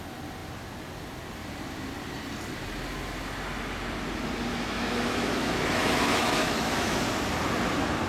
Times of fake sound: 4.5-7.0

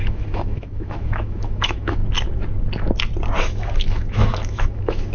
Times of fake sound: 0.0-2.0; 3.4-5.1

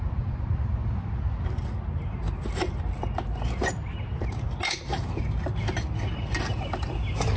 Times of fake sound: none

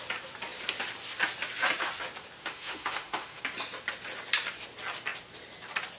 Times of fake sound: 2.4-3.4

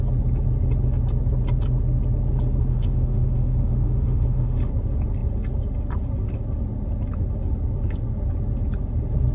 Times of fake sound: 2.7-4.7

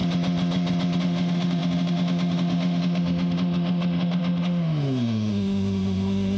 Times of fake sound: 1.0-6.4

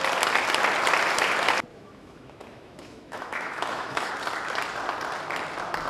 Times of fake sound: 1.7-4.1